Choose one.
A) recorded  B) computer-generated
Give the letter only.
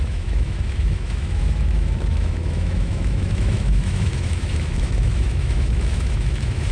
B